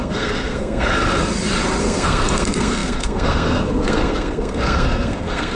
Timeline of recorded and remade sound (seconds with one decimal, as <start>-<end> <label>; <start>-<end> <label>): 0.0-1.0 remade; 1.0-1.8 recorded; 1.8-5.5 remade